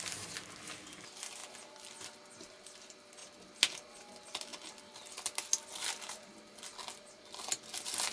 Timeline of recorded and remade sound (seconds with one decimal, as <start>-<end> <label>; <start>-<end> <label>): 0.0-8.1 recorded